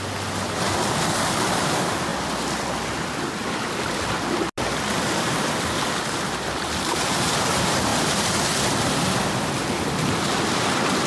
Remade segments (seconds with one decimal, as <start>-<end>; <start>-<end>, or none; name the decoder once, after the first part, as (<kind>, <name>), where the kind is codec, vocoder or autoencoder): none